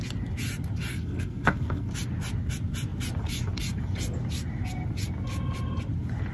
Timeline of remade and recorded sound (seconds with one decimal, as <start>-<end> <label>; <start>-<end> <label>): 0.0-0.9 recorded; 0.9-1.9 remade; 1.9-6.3 recorded